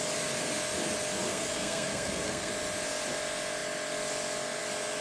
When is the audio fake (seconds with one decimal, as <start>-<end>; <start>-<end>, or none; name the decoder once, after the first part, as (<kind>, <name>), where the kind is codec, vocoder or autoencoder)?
1.3-2.5 (codec, SNAC)